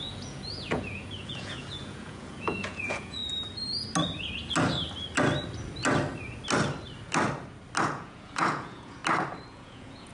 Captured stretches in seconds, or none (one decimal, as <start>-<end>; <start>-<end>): 3.2-7.8; 9.0-9.5

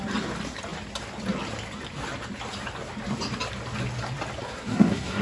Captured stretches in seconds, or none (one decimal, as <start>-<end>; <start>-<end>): 0.0-4.4

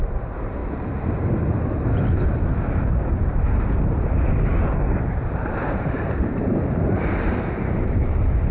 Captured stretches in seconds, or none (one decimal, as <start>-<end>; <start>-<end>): 0.6-4.9

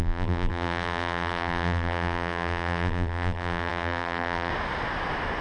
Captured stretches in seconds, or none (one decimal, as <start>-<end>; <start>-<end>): 4.5-5.4

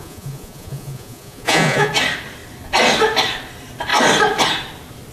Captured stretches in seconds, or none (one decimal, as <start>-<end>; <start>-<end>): 1.9-5.1

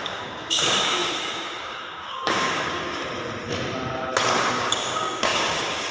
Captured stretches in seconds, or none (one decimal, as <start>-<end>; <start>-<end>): 3.0-4.5